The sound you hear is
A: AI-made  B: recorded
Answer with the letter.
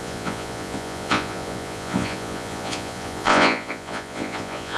A